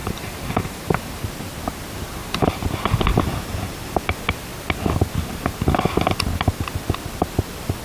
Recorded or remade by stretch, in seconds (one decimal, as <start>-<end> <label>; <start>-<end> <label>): 0.0-1.2 remade; 1.2-2.2 recorded; 2.2-2.7 remade; 2.7-7.8 recorded